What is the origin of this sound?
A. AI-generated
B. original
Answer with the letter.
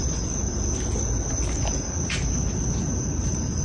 B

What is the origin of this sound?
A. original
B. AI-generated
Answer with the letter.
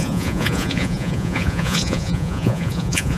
B